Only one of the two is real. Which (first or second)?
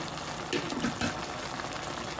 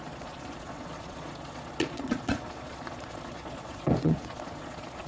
first